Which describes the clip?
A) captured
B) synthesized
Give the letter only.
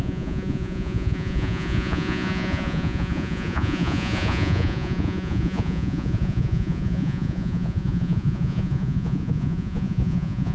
B